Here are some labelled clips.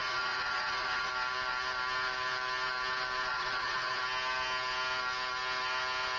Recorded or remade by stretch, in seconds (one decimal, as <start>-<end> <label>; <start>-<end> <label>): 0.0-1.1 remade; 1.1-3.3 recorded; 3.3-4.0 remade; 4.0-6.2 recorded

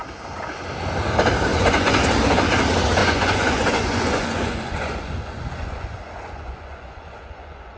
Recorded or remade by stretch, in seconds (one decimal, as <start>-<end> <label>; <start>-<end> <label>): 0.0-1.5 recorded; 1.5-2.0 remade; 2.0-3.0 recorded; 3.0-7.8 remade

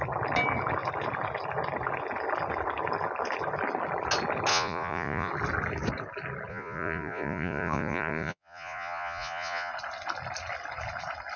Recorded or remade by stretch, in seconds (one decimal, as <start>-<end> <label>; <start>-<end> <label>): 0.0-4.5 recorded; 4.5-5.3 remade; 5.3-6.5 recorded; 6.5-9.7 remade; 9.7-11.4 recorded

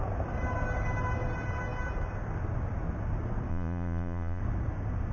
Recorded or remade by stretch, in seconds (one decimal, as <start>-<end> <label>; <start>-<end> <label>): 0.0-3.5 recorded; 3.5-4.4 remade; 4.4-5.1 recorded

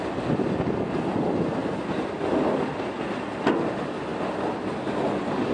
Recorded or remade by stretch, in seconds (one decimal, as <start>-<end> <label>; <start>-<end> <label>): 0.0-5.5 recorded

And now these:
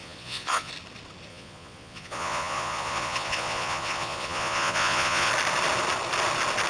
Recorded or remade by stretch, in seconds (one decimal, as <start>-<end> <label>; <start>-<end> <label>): 0.0-0.7 remade; 0.7-1.3 recorded; 1.3-5.3 remade; 5.3-6.7 recorded